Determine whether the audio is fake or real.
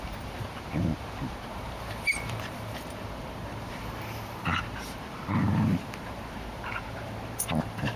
fake